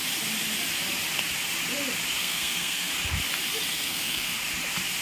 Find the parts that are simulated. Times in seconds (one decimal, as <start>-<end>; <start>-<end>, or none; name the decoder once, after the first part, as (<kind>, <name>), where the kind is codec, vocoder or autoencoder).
2.2-2.9 (codec, SNAC); 3.7-4.4